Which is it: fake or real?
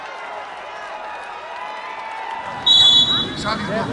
real